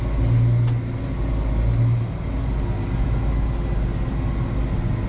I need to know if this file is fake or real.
real